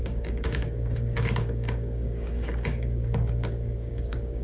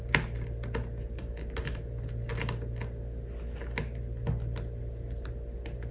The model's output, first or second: first